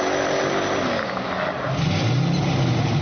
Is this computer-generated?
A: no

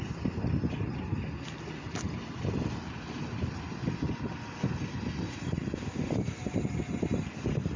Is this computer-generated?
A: no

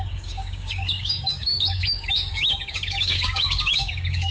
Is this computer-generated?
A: yes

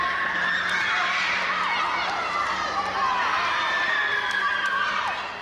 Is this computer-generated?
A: no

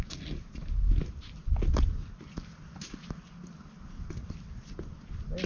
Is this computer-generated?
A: no